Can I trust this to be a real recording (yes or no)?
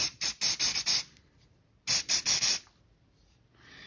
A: yes